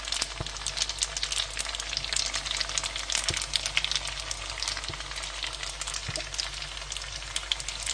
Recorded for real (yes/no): yes